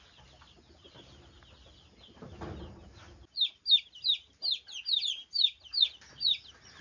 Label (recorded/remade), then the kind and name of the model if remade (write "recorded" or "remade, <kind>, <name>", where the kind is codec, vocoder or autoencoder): recorded